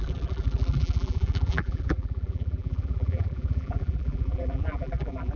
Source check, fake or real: fake